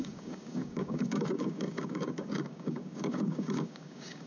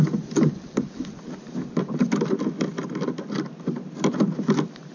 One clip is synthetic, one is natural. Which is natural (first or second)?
second